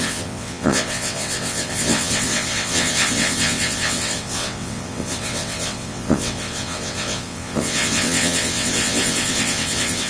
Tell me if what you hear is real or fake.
fake